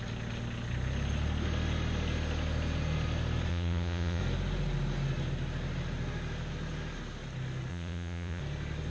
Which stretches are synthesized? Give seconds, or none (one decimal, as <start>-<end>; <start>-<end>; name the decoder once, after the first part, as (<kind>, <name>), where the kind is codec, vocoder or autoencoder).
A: 3.5-4.2 (vocoder, Vocos); 7.7-8.4